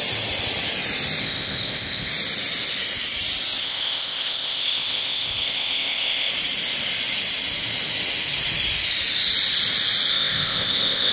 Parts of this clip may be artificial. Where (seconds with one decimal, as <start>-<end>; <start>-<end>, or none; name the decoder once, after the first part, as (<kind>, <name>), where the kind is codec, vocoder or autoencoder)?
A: 1.2-2.1 (codec, ZipCodec); 3.6-6.3; 10.1-11.1